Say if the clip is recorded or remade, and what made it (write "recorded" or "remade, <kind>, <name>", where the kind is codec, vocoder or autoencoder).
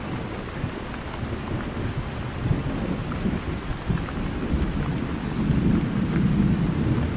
recorded